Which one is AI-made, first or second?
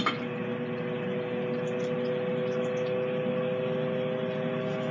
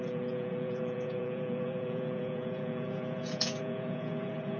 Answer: second